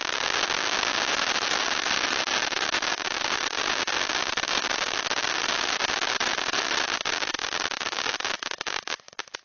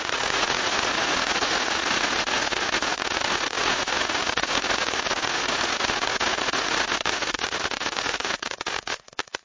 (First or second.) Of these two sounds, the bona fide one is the first